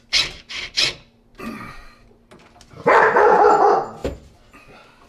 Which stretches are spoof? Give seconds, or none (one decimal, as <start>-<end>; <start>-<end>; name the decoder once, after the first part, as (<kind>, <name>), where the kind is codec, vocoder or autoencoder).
none